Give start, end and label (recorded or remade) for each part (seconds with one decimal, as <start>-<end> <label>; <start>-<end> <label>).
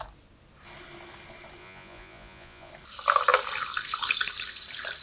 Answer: 0.0-1.6 recorded; 1.6-2.7 remade; 2.7-5.0 recorded